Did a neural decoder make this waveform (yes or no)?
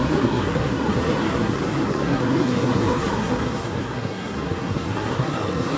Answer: yes